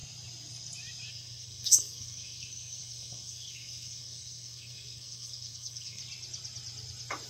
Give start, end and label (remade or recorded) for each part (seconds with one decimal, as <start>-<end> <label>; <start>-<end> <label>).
0.0-1.1 recorded; 1.1-6.0 remade; 6.0-7.3 recorded